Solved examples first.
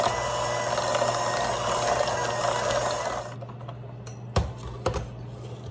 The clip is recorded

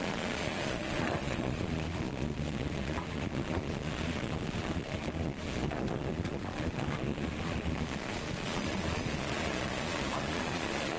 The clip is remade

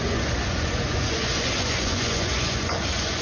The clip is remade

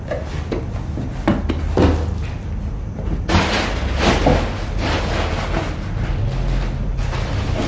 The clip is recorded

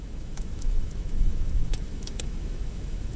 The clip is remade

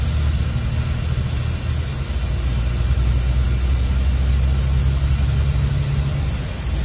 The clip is recorded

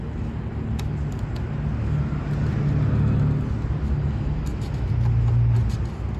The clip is recorded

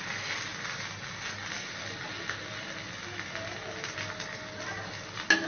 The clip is recorded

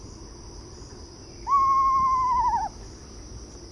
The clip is recorded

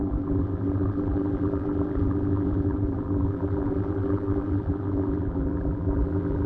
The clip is remade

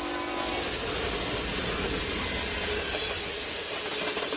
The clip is recorded